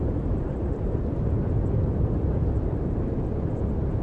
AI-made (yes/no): no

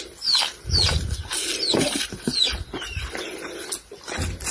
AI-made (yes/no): no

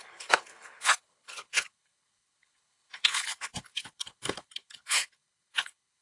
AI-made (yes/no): yes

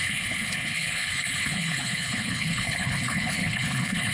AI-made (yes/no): yes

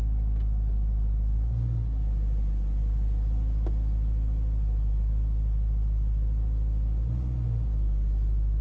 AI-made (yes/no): no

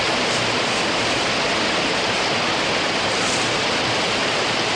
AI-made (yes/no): no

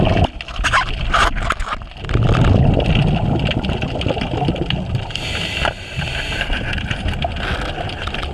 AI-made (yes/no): no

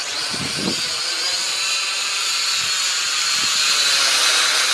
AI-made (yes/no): no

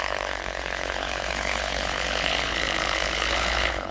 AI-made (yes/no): yes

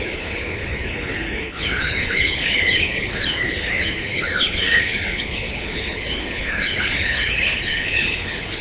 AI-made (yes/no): yes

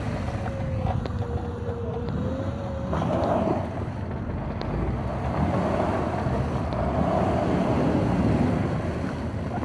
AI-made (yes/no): no